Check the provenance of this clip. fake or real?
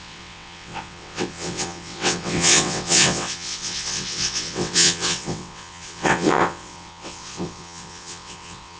fake